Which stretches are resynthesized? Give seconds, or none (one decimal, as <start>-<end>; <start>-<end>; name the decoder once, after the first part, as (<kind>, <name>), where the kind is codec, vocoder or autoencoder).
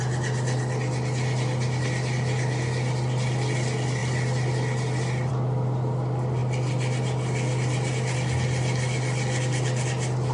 none